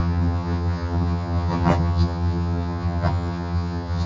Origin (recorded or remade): remade